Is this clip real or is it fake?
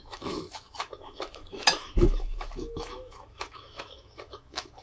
fake